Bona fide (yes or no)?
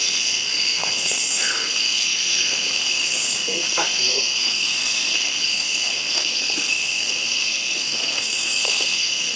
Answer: no